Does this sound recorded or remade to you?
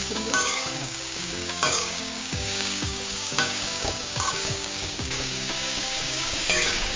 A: remade